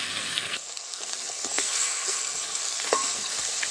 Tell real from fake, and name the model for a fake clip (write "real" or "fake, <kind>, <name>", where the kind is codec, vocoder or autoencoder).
fake, codec, SNAC